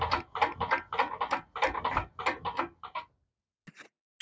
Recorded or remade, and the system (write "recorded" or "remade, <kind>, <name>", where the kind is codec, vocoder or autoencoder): recorded